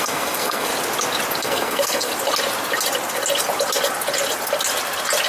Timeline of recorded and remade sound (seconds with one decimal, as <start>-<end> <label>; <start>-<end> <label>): 0.0-0.7 remade; 0.7-1.4 recorded; 1.4-2.1 remade; 2.1-5.3 recorded